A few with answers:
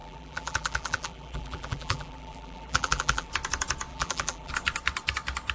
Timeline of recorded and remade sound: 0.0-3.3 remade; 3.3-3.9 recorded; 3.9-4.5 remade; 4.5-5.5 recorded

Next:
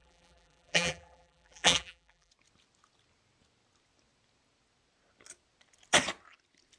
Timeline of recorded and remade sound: 0.0-2.3 remade; 2.3-6.8 recorded